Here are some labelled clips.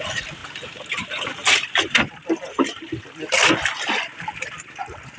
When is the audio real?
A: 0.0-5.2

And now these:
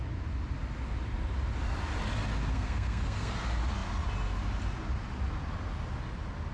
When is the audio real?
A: 0.0-2.5; 3.3-6.5

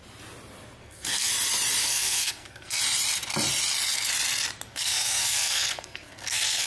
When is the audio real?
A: 0.0-0.8; 1.3-1.8; 2.8-4.7

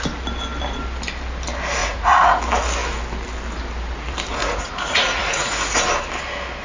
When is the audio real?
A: 0.0-1.8; 2.4-4.4; 5.8-6.6